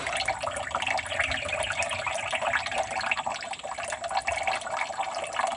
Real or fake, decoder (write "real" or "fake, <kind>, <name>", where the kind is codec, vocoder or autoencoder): real